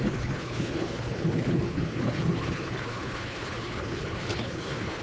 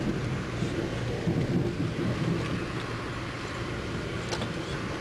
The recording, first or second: second